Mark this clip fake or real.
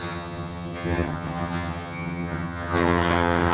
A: fake